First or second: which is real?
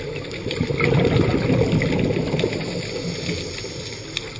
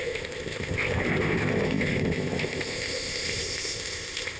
first